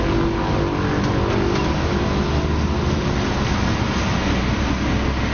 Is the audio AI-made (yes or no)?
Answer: no